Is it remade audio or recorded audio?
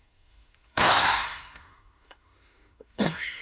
remade